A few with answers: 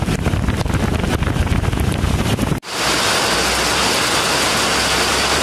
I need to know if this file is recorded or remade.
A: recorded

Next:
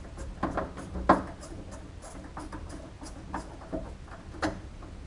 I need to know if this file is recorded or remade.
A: recorded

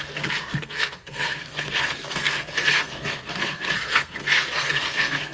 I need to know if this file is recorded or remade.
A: remade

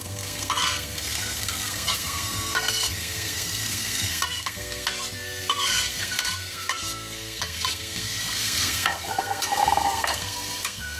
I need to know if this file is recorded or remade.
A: remade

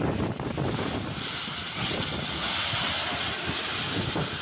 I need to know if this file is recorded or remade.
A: recorded